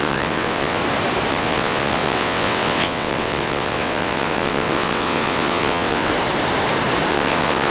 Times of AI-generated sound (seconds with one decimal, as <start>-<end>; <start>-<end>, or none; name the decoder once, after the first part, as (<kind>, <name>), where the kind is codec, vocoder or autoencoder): 0.0-0.8 (vocoder, WaveNeXt); 1.3-6.1; 7.1-7.7